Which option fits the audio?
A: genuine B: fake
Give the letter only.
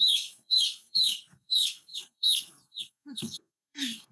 B